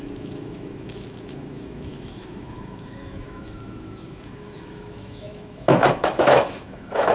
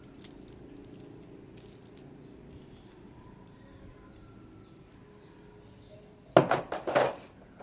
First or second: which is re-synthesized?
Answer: first